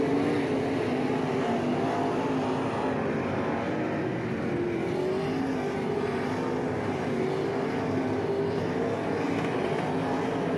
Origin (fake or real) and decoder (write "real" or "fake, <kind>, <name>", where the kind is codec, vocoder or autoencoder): real